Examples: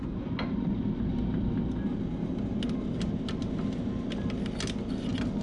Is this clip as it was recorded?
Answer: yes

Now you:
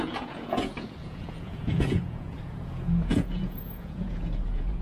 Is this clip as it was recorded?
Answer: no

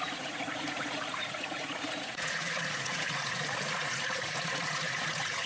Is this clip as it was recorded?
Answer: no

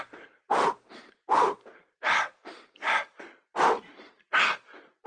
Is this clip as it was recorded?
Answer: yes